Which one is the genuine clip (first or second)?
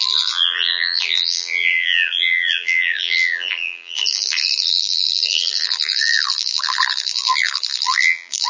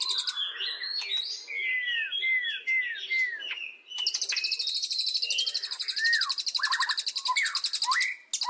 second